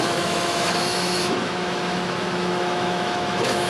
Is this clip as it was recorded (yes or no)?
no